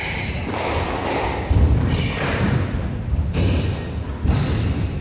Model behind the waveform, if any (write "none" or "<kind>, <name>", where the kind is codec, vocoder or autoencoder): none